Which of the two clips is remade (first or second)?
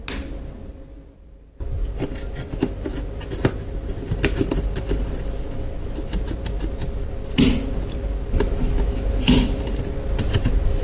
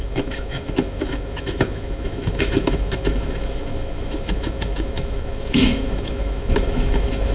second